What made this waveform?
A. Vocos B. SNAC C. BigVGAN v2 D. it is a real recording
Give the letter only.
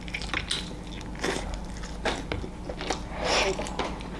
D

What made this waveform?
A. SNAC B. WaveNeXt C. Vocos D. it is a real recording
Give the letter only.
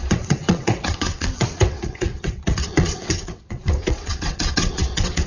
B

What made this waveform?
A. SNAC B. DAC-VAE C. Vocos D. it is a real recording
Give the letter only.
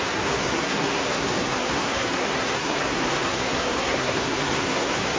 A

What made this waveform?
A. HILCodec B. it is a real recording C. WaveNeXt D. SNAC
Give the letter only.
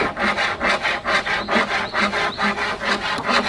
B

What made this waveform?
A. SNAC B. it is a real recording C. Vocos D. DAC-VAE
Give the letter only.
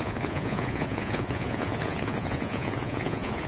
C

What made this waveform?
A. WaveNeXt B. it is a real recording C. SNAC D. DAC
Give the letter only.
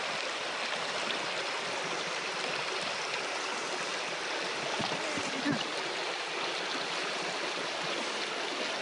B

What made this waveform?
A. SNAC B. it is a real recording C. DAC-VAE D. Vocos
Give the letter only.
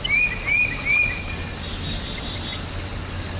B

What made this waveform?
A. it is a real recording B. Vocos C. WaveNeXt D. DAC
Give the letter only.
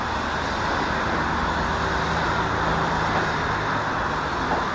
A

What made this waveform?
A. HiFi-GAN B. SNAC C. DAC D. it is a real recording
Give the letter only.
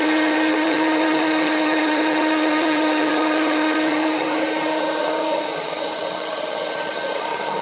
A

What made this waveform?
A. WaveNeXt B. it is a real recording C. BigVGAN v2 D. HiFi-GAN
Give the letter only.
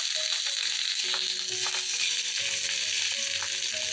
B